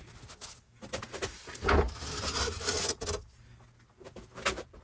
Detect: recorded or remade recorded